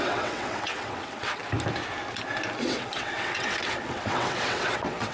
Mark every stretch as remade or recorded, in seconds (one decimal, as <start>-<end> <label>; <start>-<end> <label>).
0.0-1.4 remade; 1.4-2.6 recorded; 2.6-5.1 remade